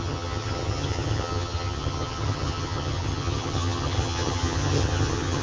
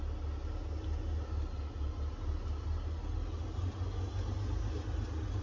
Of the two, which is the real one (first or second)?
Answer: second